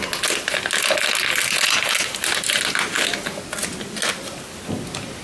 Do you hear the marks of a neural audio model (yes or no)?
no